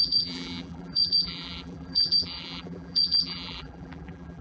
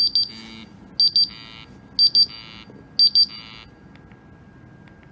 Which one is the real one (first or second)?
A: second